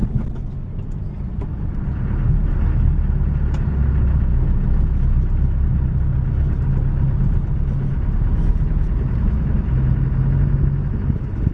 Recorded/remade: recorded